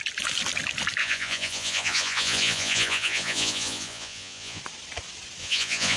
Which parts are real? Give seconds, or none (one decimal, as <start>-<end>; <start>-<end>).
0.0-1.0; 4.6-5.4